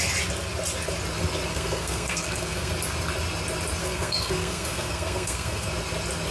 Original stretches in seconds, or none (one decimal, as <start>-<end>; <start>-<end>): 0.0-1.5; 2.7-3.8; 5.7-6.3